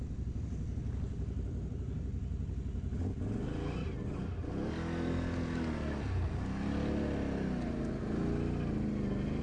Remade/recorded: recorded